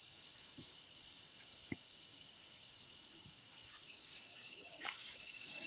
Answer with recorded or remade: remade